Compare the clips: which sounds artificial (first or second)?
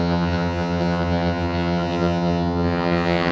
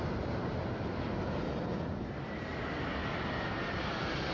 first